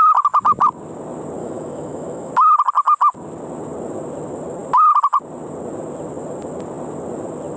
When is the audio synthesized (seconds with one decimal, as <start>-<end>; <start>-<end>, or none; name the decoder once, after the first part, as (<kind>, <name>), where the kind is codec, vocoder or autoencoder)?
1.4-2.3 (autoencoder, DAC-VAE)